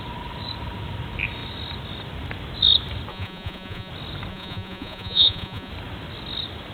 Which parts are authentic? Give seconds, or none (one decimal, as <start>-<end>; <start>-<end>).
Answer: 0.0-3.1; 3.9-4.3; 5.7-6.7